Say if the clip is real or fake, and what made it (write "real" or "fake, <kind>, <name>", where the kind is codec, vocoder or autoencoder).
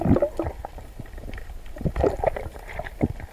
real